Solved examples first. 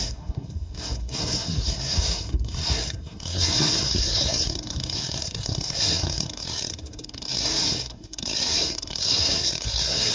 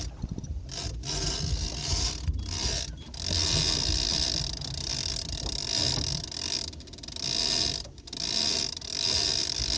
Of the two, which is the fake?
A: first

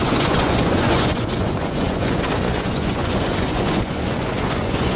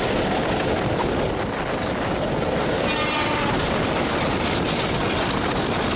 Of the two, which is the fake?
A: first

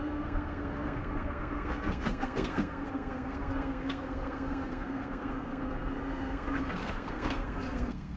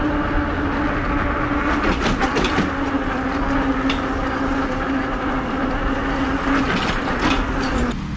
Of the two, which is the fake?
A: first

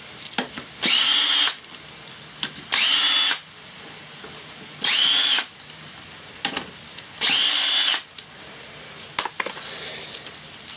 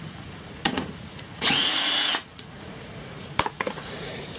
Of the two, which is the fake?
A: second